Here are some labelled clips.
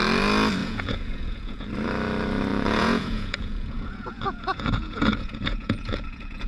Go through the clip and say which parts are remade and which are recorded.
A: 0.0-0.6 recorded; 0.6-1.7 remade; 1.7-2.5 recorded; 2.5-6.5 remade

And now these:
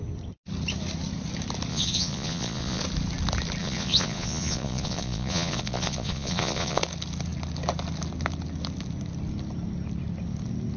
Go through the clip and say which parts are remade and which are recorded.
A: 0.0-1.7 recorded; 1.7-2.8 remade; 2.8-3.6 recorded; 3.6-6.8 remade; 6.8-10.8 recorded

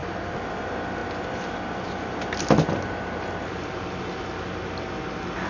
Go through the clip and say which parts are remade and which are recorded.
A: 0.0-5.5 recorded

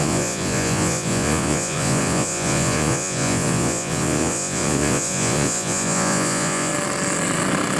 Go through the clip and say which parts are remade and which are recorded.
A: 0.0-6.7 remade; 6.7-7.8 recorded

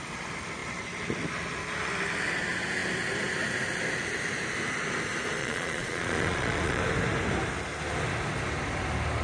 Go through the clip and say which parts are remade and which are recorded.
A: 0.0-5.4 recorded; 5.4-6.8 remade; 6.8-9.2 recorded

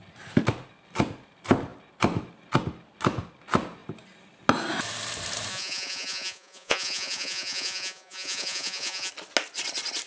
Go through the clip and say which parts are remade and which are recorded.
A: 0.0-5.5 recorded; 5.5-9.1 remade; 9.1-10.1 recorded